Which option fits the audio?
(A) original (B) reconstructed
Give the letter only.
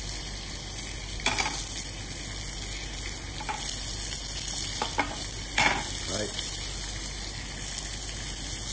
A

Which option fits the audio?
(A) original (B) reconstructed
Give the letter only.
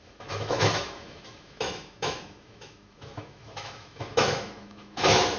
B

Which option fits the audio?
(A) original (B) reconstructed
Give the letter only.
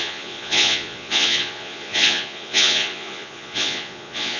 B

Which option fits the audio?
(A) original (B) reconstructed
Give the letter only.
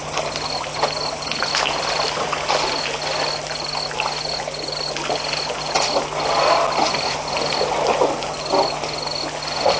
A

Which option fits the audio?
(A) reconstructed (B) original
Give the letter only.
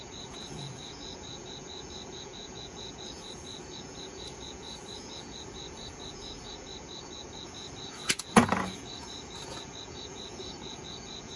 A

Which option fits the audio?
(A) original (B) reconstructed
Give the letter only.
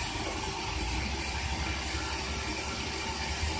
A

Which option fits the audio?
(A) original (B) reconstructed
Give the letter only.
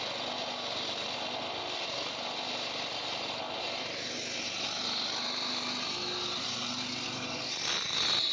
A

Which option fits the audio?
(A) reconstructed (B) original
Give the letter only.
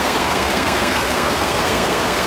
A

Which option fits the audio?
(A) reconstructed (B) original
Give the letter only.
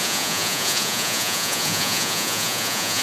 A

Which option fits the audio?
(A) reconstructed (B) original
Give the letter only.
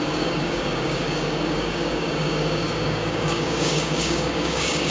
A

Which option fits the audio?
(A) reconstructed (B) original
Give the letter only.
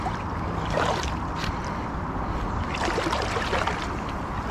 A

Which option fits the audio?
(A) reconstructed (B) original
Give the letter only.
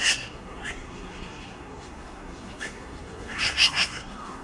A